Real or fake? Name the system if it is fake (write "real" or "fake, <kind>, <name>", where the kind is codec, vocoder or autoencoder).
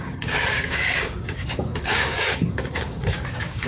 fake, codec, DAC